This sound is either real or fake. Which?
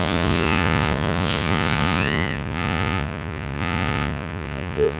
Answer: fake